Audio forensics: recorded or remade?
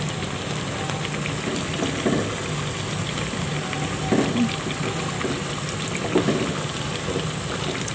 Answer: recorded